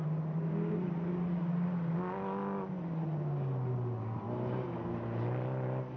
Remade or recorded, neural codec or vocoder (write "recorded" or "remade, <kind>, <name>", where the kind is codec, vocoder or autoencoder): recorded